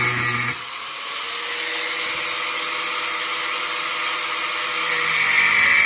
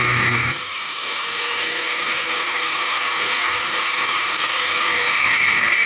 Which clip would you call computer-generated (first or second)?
second